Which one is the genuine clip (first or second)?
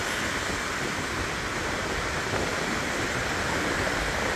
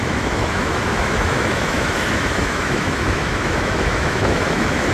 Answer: first